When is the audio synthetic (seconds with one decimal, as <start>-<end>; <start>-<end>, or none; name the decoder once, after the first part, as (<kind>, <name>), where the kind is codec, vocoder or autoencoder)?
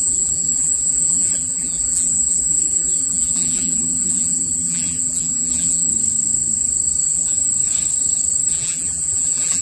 0.0-5.9 (vocoder, BigVGAN v2); 7.0-7.5; 8.5-9.6